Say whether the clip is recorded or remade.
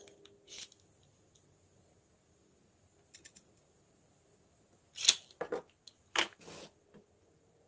recorded